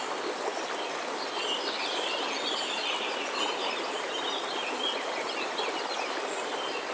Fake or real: real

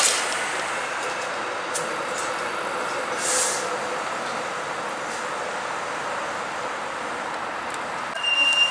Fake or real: real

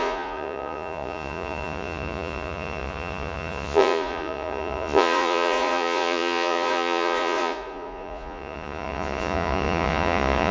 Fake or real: fake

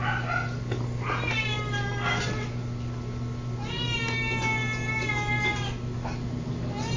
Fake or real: real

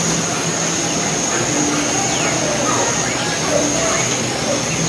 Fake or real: real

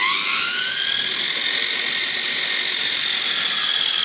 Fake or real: real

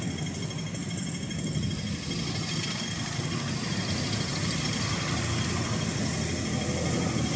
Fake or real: real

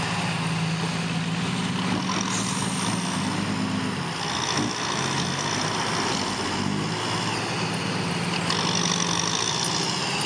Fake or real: real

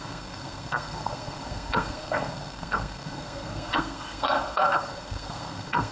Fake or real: fake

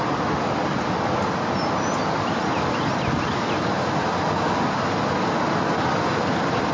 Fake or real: real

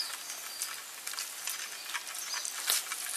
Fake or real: real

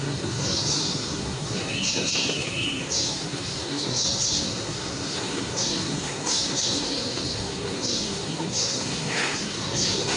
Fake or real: fake